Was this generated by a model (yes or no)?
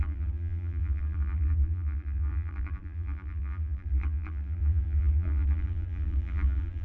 yes